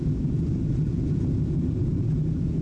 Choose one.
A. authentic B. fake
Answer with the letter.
B